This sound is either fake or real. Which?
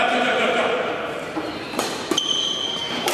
fake